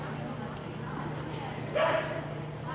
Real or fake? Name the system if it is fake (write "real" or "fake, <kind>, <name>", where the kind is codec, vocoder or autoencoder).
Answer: real